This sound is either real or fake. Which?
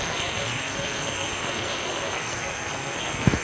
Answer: fake